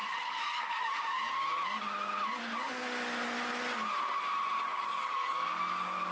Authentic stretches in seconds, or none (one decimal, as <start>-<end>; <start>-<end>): 0.9-4.7